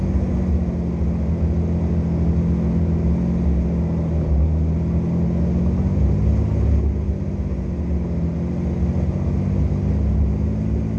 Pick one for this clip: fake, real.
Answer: real